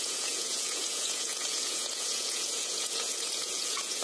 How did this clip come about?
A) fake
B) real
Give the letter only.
A